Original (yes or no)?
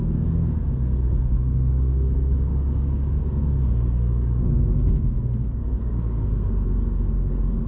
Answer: no